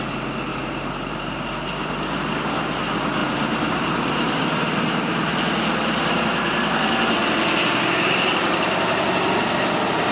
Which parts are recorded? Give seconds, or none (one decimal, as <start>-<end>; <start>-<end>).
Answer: 0.0-0.5; 1.9-3.2; 4.4-10.1

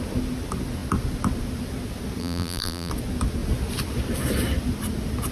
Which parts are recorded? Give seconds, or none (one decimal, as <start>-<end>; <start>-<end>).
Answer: 0.0-2.2; 2.9-5.3